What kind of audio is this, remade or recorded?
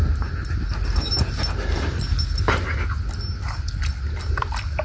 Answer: recorded